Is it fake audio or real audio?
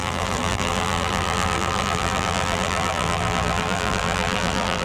fake